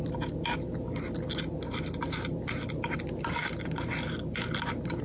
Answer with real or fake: real